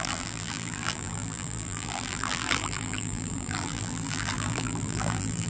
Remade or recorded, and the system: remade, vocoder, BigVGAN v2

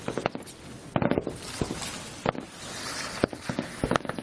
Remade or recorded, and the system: recorded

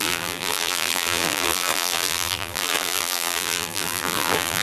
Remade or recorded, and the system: remade, vocoder, BigVGAN v2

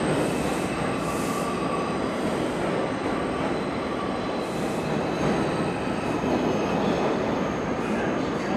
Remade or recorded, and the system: recorded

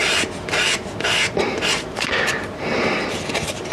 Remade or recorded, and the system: remade, vocoder, BigVGAN v2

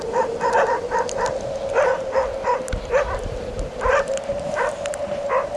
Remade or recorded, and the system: remade, vocoder, BigVGAN v2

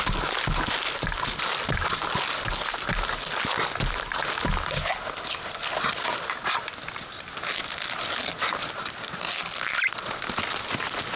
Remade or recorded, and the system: recorded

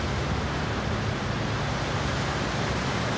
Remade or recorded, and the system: remade, vocoder, BigVGAN v2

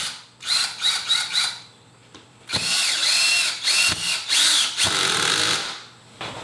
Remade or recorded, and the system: remade, vocoder, BigVGAN v2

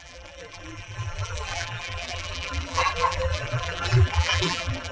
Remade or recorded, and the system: remade, vocoder, BigVGAN v2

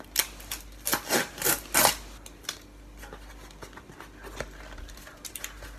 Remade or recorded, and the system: recorded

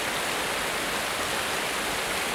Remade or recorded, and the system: recorded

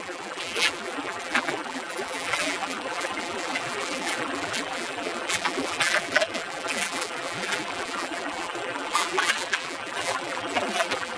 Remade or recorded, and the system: remade, vocoder, BigVGAN v2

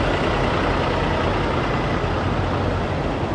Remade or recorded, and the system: recorded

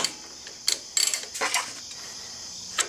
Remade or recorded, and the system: recorded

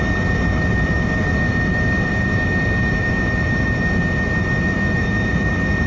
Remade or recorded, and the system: remade, vocoder, BigVGAN v2